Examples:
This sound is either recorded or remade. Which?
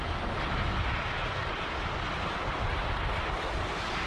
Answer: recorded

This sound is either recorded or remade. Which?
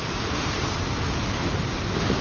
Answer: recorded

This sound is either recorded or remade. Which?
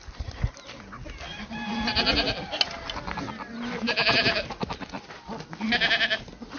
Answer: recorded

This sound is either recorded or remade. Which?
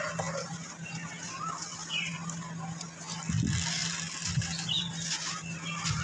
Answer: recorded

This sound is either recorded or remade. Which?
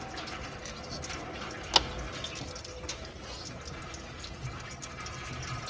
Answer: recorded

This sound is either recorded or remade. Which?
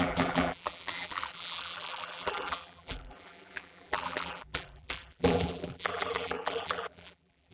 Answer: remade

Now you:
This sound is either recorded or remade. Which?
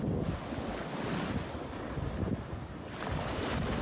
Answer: recorded